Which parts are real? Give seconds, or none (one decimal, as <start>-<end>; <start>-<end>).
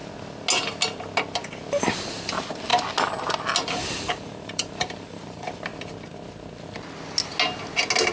0.0-1.7; 2.7-3.7; 5.7-8.1